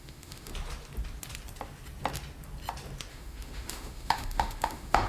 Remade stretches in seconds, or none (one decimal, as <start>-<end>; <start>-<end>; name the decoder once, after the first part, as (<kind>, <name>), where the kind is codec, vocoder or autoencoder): 0.0-0.5 (autoencoder, DAC-VAE); 3.1-5.1